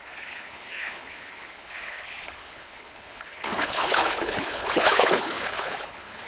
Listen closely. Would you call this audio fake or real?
fake